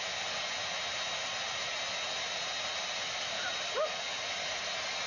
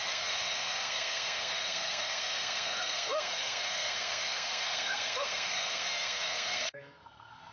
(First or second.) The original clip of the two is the first